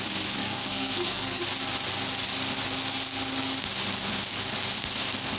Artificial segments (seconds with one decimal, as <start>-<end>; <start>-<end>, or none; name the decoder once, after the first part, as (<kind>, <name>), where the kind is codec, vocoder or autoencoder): 0.4-1.4 (codec, SNAC)